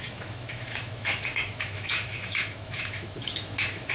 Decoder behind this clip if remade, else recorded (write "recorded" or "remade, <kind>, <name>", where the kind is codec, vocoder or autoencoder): remade, autoencoder, DAC-VAE